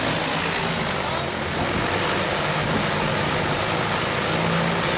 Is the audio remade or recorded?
recorded